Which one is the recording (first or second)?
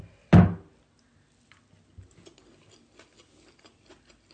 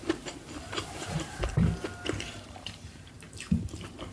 first